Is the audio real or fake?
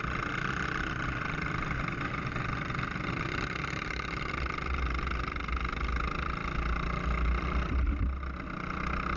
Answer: real